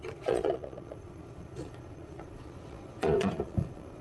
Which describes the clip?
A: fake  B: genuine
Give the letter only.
A